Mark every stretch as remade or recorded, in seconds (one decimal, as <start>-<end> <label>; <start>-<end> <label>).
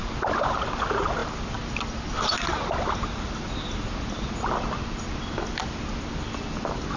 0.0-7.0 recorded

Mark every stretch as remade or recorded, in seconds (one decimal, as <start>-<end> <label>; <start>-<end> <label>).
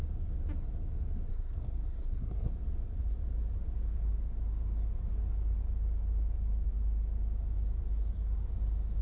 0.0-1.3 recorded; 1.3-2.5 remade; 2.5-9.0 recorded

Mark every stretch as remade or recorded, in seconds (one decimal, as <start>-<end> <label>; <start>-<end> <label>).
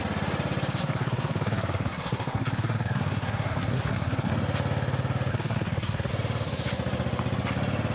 0.0-0.8 recorded; 0.8-4.3 remade; 4.3-5.3 recorded; 5.3-6.1 remade; 6.1-7.9 recorded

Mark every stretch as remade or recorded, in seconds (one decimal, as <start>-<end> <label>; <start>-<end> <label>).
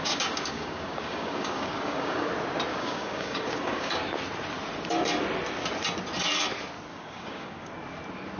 0.0-2.3 remade; 2.3-2.7 recorded; 2.7-4.0 remade; 4.0-6.9 recorded; 6.9-7.7 remade; 7.7-8.4 recorded